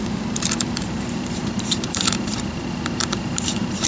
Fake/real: fake